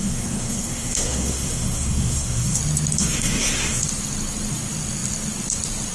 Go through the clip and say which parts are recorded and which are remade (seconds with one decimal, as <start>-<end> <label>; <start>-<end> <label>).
0.0-2.6 remade; 2.6-3.0 recorded; 3.0-3.8 remade; 3.8-5.9 recorded